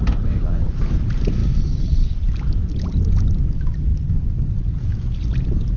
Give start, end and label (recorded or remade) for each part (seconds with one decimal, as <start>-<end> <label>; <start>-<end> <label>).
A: 0.0-3.9 recorded; 3.9-5.8 remade